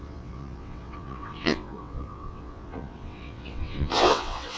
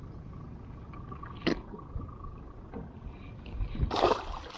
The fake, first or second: first